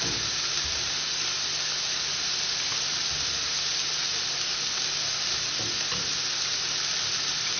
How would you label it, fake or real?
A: real